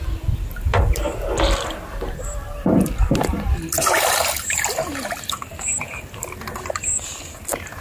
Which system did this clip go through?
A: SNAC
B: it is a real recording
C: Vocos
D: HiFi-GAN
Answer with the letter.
B